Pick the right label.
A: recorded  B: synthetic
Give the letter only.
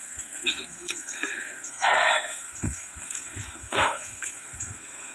B